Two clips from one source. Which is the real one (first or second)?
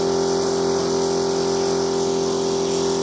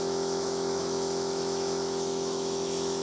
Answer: first